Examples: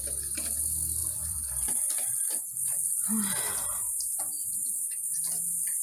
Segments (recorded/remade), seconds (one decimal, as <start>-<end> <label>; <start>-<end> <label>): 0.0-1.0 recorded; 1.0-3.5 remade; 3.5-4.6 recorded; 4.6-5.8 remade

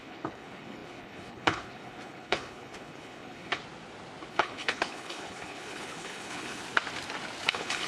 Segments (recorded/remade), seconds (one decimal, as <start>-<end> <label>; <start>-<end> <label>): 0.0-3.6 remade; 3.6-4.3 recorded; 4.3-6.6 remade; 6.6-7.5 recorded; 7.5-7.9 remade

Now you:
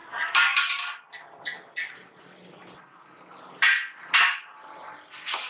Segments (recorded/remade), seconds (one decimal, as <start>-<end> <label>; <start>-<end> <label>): 0.0-0.8 remade; 0.8-5.5 recorded